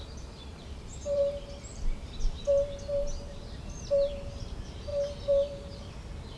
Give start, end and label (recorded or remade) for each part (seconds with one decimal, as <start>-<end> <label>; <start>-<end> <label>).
0.0-6.4 recorded